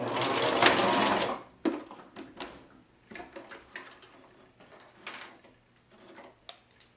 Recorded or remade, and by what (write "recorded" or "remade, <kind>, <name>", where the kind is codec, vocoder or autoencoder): recorded